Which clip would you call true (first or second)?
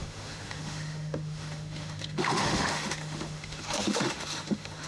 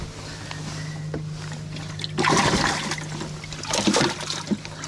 second